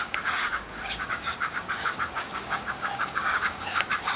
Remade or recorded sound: remade